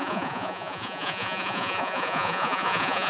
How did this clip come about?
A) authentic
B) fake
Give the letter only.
B